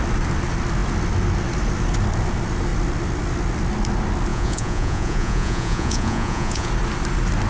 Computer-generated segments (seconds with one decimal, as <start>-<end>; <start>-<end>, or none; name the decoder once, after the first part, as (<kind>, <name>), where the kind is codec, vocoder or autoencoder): 4.3-6.7 (vocoder, Vocos)